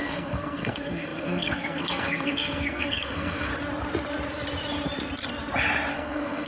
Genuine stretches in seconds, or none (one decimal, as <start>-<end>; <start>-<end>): 3.5-5.9